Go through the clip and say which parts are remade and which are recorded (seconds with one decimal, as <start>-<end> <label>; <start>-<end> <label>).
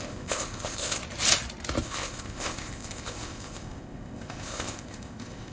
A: 0.0-1.0 remade; 1.0-1.8 recorded; 1.8-5.5 remade